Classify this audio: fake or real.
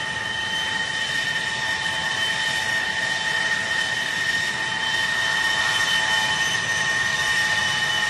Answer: real